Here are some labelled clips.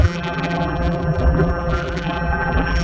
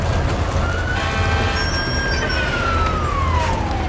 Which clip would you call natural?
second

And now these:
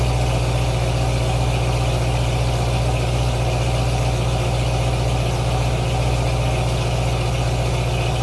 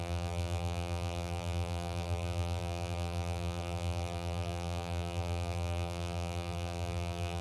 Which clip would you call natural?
first